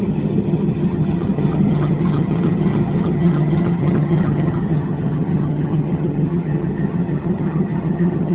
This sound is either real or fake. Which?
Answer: fake